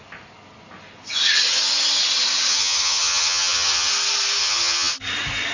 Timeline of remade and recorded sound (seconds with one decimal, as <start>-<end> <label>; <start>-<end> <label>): 0.0-2.5 recorded; 2.5-3.9 remade; 3.9-4.4 recorded; 4.4-4.9 remade; 4.9-5.5 recorded